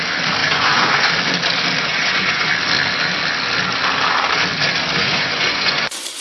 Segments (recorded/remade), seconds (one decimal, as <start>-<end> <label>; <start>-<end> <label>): 0.0-0.4 recorded; 0.4-1.1 remade; 1.1-1.9 recorded; 1.9-2.5 remade; 2.5-5.0 recorded; 5.0-6.2 remade